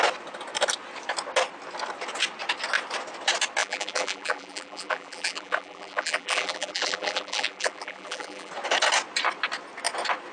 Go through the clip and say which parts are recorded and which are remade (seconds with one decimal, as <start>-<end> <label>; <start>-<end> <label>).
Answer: 0.0-3.6 recorded; 3.6-8.5 remade; 8.5-10.3 recorded